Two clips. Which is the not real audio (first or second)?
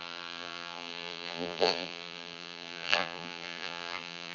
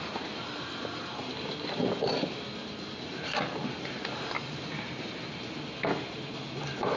first